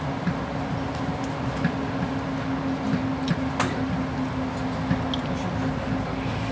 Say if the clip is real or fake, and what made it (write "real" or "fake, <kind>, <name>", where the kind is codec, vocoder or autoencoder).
real